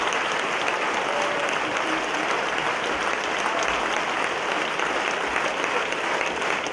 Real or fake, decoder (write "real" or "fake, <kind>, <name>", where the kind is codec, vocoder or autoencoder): real